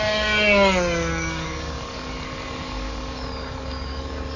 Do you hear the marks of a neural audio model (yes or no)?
yes